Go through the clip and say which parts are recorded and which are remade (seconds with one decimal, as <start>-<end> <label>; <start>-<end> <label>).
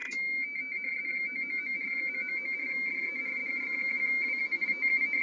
0.0-5.2 recorded